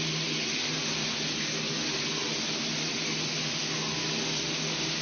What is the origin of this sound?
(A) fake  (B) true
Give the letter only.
B